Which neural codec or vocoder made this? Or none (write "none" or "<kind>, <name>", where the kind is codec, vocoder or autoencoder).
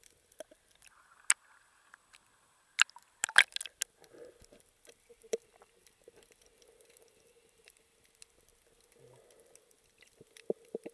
none